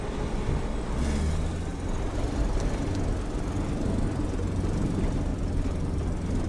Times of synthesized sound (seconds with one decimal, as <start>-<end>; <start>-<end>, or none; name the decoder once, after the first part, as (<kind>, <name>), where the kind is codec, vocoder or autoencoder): 1.7-2.6 (vocoder, BigVGAN v2); 5.3-6.5